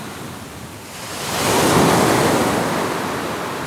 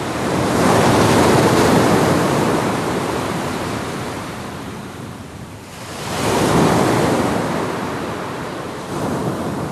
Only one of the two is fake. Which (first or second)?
second